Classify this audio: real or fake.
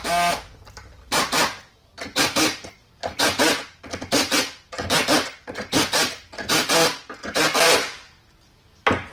real